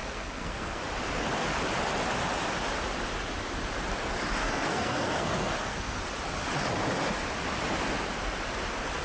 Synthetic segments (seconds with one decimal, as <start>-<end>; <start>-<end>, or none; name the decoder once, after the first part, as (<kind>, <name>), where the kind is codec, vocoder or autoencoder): 0.0-0.8 (codec, SNAC); 4.4-6.0